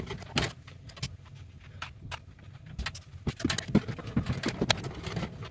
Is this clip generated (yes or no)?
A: no